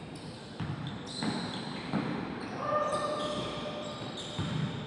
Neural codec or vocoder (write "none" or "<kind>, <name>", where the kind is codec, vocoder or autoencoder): none